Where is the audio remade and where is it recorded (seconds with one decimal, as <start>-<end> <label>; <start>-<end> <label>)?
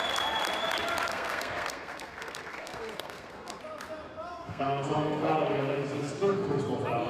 0.0-1.1 recorded; 1.1-3.6 remade; 3.6-4.3 recorded; 4.3-6.6 remade; 6.6-7.1 recorded